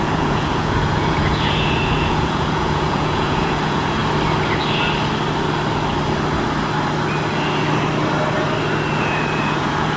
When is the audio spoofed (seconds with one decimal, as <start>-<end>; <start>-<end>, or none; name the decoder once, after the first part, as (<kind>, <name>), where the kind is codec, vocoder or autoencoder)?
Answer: 0.0-4.0 (vocoder, Vocos); 8.9-10.0